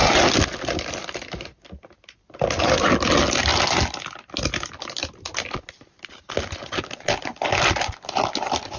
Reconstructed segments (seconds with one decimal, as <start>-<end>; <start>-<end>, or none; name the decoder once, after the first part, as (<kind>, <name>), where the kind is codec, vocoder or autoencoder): none